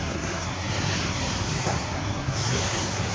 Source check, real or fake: fake